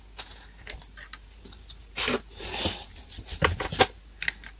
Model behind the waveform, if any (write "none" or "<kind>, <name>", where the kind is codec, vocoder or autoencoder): none